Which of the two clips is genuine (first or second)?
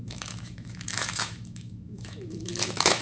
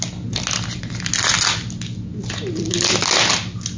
second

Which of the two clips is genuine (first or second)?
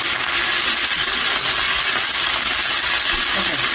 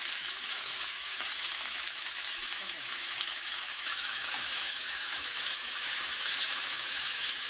first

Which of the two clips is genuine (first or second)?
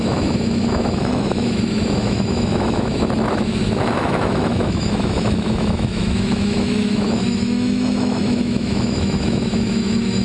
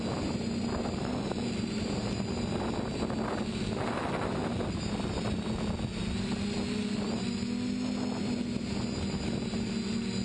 second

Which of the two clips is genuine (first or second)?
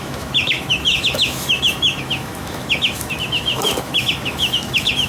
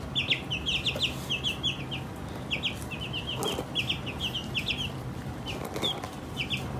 second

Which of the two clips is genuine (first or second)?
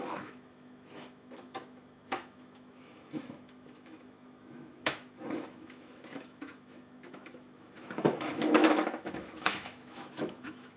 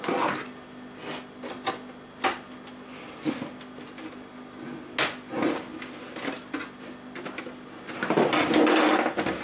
second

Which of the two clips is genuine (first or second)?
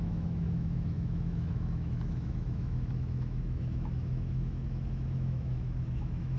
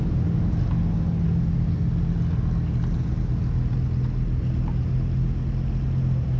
second